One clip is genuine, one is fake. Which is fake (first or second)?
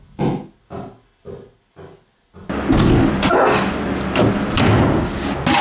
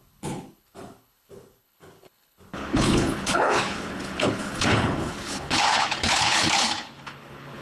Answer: second